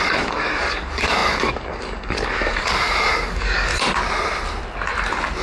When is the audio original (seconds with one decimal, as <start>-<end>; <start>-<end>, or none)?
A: 3.7-5.4